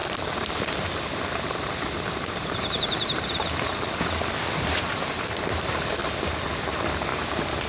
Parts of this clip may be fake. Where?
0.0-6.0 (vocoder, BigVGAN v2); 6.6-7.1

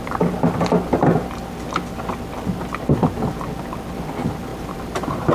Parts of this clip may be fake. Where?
4.5-5.3 (vocoder, BigVGAN v2)

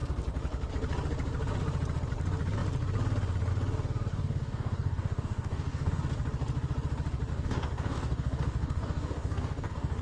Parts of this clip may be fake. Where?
4.1-6.0 (codec, DAC); 7.3-10.0

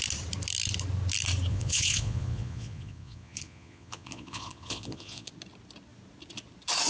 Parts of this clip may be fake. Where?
1.5-5.3 (vocoder, Vocos)

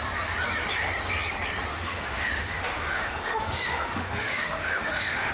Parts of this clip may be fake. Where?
1.7-5.3 (autoencoder, DAC-VAE)